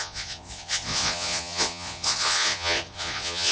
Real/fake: fake